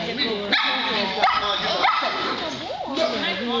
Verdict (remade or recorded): recorded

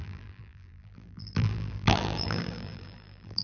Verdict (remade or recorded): remade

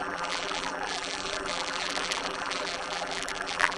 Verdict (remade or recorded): remade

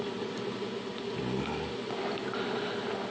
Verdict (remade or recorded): recorded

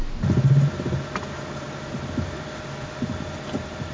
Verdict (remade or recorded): recorded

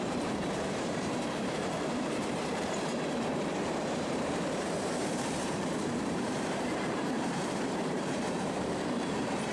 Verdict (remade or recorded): remade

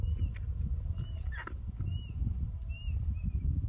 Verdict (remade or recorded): recorded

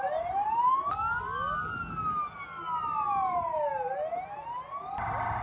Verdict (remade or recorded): recorded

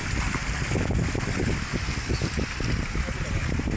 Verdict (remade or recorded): remade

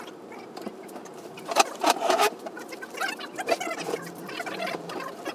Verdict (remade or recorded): remade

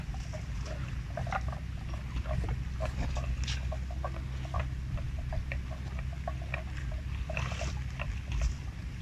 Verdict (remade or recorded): recorded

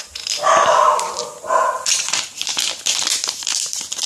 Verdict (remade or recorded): remade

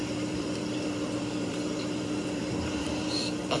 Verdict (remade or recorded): remade